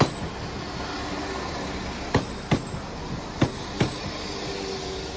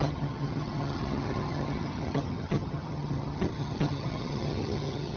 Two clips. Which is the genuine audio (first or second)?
first